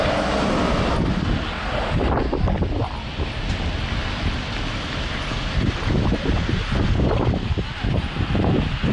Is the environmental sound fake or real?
real